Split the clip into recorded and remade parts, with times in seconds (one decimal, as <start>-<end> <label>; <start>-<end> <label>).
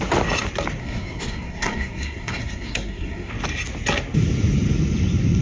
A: 0.0-0.8 recorded; 0.8-3.3 remade; 3.3-5.4 recorded